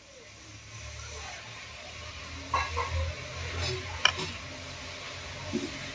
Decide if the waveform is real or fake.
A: real